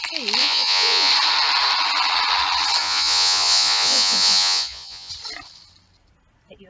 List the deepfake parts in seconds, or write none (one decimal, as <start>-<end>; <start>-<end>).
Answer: 0.4-1.1; 2.8-5.1